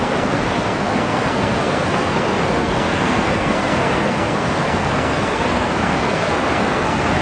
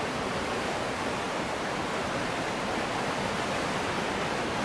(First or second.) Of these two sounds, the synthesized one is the first